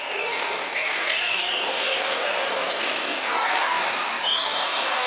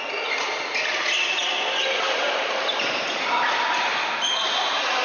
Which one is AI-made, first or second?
first